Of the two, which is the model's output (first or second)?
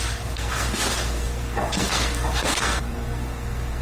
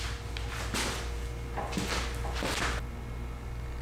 first